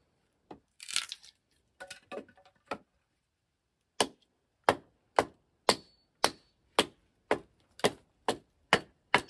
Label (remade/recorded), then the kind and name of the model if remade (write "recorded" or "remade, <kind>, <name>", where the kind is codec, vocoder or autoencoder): recorded